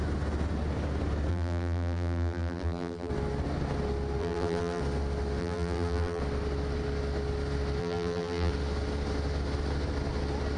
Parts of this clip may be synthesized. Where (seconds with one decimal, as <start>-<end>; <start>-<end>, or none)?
1.3-3.1; 4.2-4.8; 5.4-6.2; 7.8-8.5